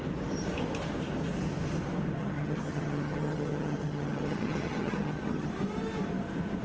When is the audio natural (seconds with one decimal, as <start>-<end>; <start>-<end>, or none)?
0.0-2.2; 5.5-6.6